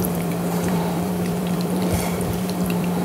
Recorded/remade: remade